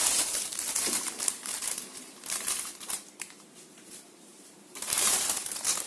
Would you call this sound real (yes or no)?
no